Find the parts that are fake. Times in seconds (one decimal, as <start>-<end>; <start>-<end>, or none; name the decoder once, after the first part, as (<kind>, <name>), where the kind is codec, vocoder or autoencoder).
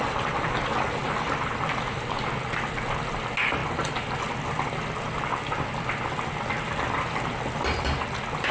none